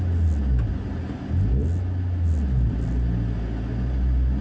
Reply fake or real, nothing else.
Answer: real